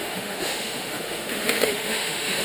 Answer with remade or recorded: remade